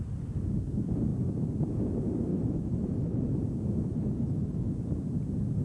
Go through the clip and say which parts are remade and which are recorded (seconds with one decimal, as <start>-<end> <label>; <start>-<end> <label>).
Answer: 0.0-2.3 recorded; 2.3-3.2 remade; 3.2-3.9 recorded; 3.9-4.7 remade; 4.7-5.6 recorded